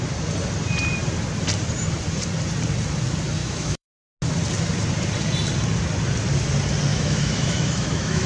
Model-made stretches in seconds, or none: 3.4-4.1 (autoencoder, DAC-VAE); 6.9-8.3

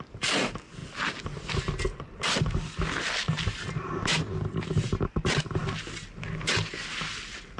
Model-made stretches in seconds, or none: none

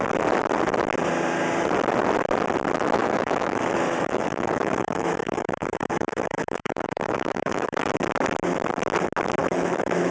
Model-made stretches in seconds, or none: 3.0-7.9 (autoencoder, DAC-VAE); 9.4-10.1

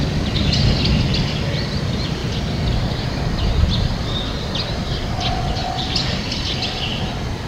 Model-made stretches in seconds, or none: none